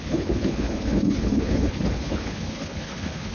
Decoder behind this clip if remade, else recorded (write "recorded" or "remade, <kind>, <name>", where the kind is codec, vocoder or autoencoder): remade, codec, HILCodec